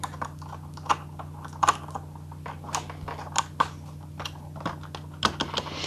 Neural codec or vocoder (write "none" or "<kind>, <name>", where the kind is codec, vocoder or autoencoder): none